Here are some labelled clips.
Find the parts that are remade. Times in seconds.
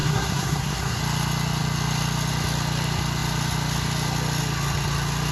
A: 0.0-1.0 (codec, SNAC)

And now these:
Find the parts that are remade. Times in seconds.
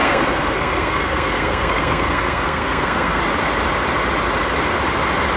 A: 0.0-3.2 (codec, SNAC)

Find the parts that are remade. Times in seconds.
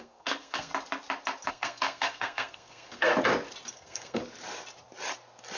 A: 0.0-0.7 (codec, SNAC); 1.5-3.1; 3.7-4.2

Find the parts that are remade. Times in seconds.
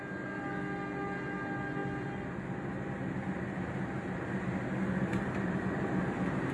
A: none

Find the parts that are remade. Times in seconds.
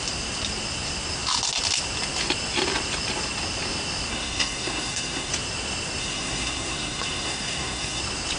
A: 4.1-5.3 (codec, SNAC); 6.0-8.0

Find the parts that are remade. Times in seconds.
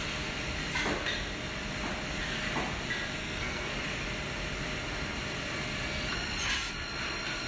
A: 3.2-3.7 (codec, SNAC)